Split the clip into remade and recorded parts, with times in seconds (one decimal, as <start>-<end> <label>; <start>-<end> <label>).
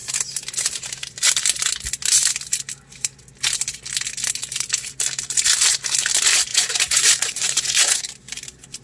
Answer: 0.0-6.5 recorded; 6.5-8.0 remade; 8.0-8.8 recorded